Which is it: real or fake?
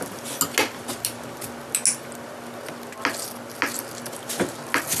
real